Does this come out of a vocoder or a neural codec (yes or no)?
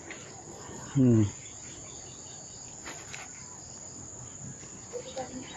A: no